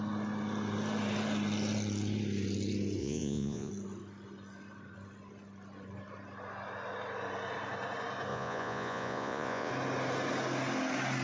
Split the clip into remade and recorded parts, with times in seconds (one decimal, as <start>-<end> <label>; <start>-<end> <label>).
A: 0.0-3.0 recorded; 3.0-3.7 remade; 3.7-8.3 recorded; 8.3-9.7 remade; 9.7-11.2 recorded